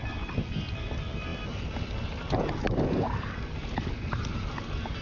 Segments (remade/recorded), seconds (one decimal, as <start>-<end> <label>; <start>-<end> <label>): 0.0-5.0 recorded